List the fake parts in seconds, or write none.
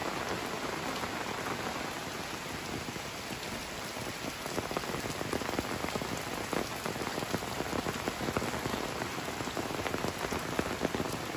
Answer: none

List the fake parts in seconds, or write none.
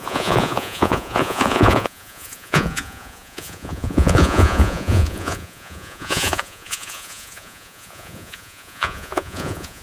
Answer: 0.0-9.8 (vocoder, Vocos)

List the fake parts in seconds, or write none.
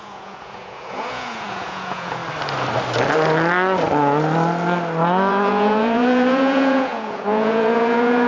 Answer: 0.0-2.2 (vocoder, Vocos); 5.3-8.3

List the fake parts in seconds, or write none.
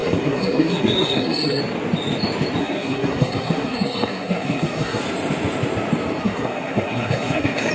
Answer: 0.0-1.6 (codec, SNAC); 2.6-5.0; 6.2-7.7